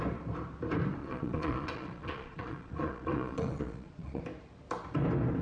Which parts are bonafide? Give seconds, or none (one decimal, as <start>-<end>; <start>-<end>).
0.0-1.0; 4.2-5.4